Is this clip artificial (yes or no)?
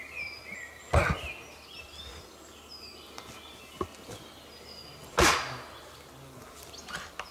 no